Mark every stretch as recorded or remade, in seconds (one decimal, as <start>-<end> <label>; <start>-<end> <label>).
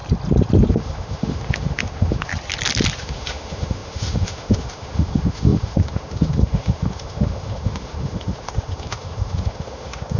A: 0.0-0.7 recorded; 0.7-2.3 remade; 2.3-3.0 recorded; 3.0-10.2 remade